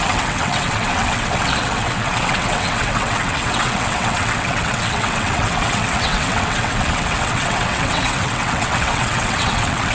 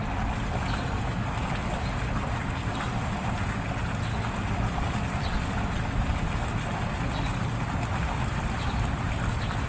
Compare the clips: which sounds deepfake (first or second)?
first